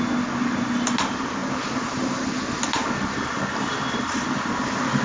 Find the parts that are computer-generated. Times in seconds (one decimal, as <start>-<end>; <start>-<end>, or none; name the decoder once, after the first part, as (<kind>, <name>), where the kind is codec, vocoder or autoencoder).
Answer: none